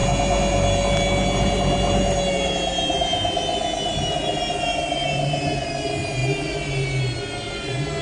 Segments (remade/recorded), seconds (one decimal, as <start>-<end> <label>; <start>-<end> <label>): 0.0-4.7 recorded; 4.7-5.7 remade; 5.7-8.0 recorded